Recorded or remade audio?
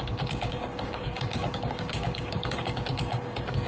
remade